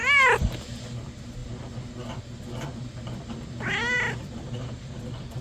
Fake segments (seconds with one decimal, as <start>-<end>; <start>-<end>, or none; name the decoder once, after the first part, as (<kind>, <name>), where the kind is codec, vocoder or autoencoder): none